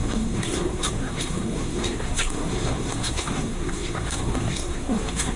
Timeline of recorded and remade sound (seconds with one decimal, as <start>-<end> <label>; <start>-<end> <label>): 0.0-5.4 remade